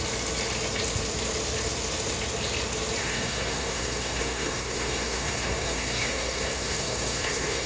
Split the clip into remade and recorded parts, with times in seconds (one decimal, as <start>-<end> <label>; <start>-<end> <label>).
0.0-3.0 recorded; 3.0-7.7 remade